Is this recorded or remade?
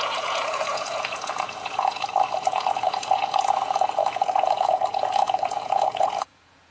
remade